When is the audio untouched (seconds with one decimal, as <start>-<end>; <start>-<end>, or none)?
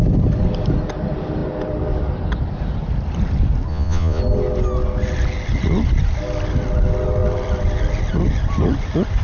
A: 0.0-3.7; 4.2-9.2